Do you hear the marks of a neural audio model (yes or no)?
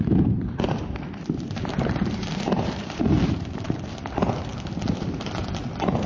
yes